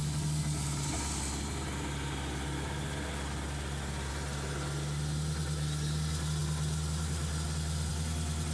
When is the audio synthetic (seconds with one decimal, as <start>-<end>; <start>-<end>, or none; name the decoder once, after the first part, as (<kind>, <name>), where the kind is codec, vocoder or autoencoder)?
none